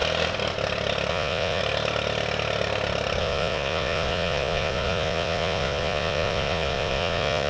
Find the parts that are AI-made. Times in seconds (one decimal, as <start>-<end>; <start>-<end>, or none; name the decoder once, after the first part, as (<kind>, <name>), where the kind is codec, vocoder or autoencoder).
1.1-1.6 (vocoder, Vocos); 3.2-7.5